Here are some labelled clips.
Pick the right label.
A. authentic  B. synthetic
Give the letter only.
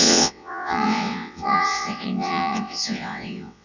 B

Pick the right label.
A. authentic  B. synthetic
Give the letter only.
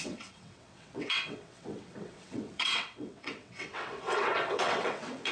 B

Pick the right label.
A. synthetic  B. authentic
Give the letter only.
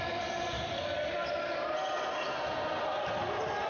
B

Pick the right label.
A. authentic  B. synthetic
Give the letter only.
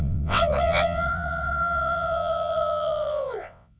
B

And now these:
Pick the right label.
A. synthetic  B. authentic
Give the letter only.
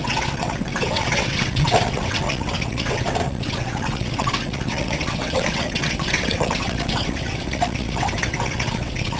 A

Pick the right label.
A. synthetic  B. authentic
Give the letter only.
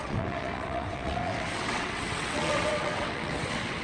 A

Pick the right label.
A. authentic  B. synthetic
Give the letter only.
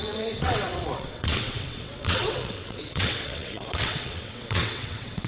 B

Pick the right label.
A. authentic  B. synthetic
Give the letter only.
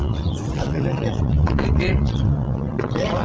B